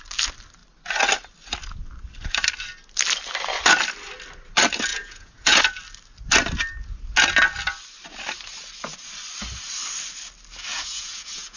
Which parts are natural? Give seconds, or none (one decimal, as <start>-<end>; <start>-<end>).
0.0-4.9; 5.6-10.7